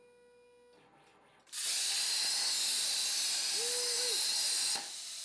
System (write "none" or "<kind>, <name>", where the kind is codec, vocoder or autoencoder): none